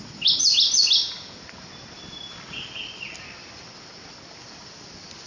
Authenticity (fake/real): real